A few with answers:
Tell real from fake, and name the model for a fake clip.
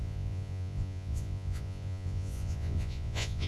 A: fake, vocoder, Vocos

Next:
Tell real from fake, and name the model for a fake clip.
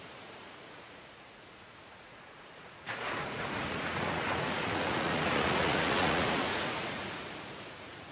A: fake, vocoder, Vocos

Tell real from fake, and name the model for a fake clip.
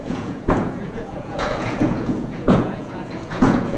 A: fake, vocoder, Vocos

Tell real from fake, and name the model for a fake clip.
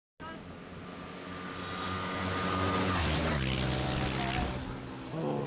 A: real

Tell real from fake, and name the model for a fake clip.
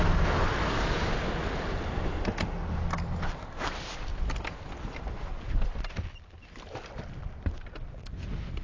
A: real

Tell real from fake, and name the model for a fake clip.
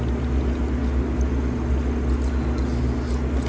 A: real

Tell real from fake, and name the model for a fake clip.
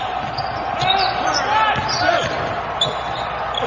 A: real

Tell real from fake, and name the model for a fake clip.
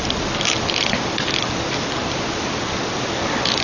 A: real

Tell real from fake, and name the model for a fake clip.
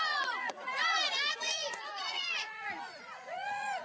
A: fake, vocoder, Vocos